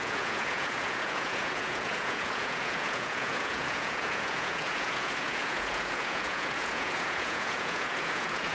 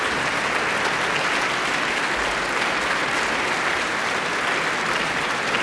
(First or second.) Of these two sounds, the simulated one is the first